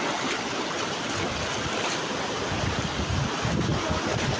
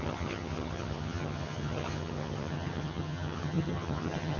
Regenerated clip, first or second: second